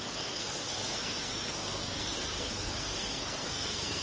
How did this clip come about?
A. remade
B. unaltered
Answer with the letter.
A